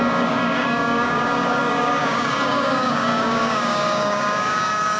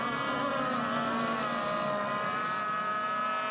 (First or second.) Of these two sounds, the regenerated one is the first